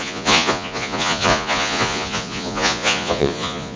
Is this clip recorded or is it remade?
remade